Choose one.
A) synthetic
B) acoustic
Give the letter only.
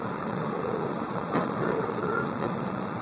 A